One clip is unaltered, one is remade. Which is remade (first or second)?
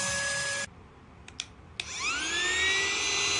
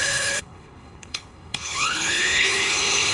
second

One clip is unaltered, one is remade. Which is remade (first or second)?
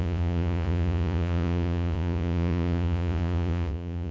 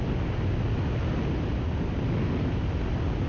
first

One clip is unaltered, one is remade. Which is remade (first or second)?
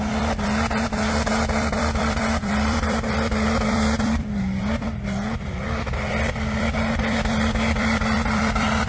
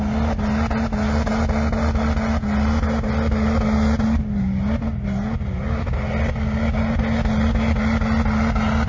first